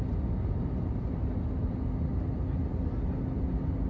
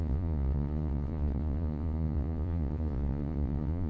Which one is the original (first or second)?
first